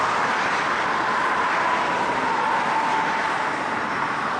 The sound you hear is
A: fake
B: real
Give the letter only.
B